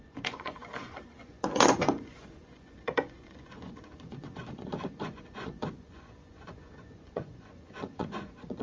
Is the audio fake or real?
fake